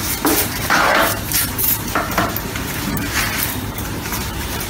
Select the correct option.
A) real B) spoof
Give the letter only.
B